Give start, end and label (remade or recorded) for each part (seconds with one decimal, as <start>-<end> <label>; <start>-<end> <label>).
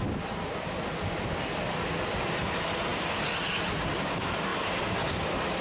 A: 0.0-5.6 recorded